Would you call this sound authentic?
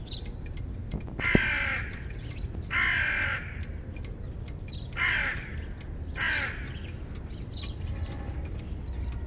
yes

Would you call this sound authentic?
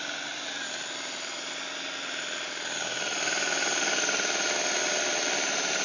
yes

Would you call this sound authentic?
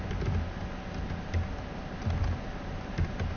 yes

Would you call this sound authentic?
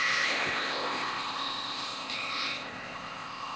no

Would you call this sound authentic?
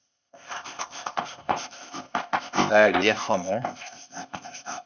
no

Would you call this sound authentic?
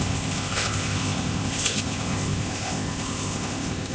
no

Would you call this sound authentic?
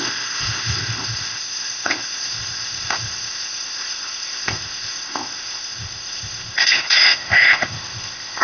no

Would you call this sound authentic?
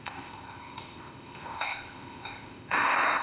no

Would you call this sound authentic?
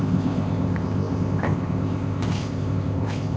no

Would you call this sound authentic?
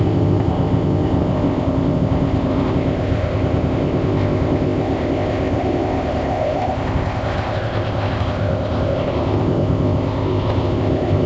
no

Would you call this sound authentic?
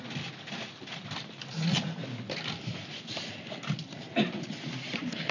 yes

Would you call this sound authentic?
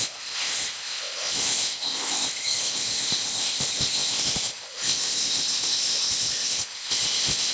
no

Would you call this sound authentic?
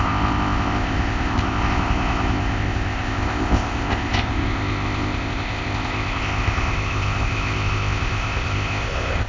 no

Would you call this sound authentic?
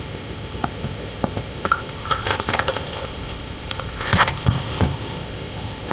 no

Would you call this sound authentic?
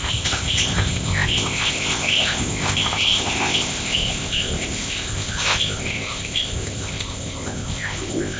no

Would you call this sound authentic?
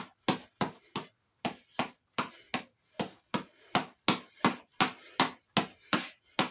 yes